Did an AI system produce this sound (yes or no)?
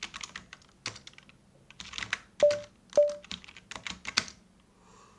no